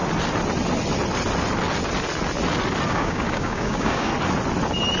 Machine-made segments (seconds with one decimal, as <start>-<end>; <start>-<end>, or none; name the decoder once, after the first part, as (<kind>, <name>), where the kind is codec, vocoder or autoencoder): 2.9-4.1 (codec, DAC)